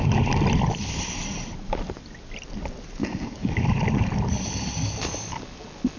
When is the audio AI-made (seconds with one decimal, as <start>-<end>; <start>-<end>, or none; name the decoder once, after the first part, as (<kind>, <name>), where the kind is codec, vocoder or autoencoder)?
3.0-3.5 (codec, DAC)